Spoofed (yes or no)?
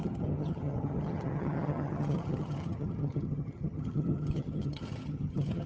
yes